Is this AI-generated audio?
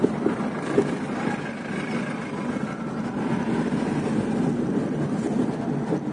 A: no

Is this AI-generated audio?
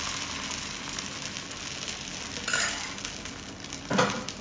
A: no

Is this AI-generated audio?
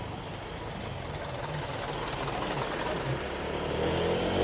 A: no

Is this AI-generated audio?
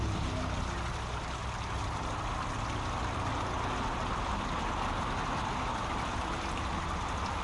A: no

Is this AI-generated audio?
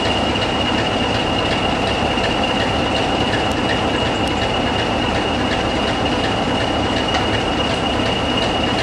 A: no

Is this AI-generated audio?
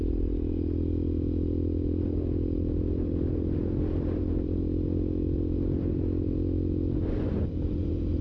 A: no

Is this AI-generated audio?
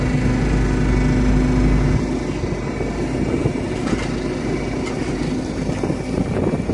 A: no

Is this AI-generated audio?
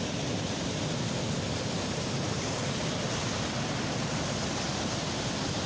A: no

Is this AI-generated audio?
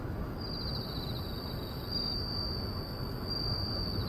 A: no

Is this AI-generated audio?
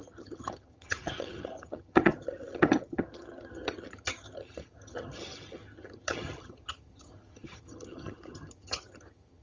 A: yes